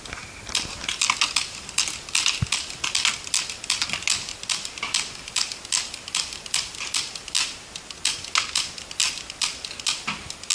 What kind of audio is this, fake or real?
real